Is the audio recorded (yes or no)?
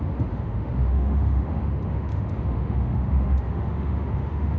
no